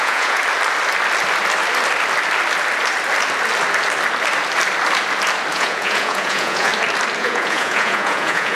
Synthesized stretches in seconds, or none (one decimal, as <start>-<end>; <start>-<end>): 0.0-0.4; 5.5-6.7; 7.2-8.5